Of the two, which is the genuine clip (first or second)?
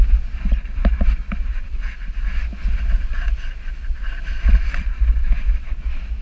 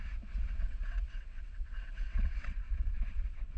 first